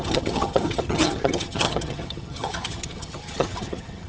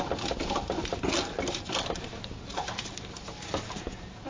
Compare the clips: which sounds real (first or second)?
second